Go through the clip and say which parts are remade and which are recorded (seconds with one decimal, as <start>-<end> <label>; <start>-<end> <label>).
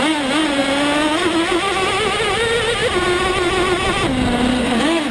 0.0-4.5 recorded; 4.5-5.1 remade